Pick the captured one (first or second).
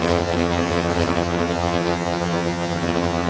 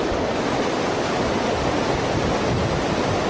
second